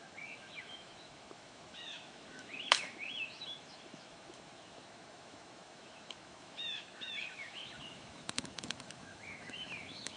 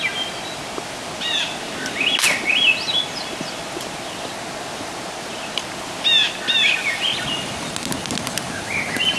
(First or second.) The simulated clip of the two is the first